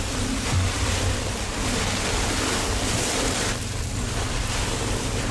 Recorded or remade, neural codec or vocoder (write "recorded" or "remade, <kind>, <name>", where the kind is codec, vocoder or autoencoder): remade, vocoder, BigVGAN v2